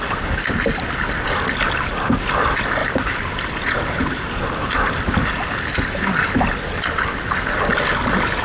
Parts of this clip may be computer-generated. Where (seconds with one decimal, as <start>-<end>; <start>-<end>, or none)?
2.8-4.3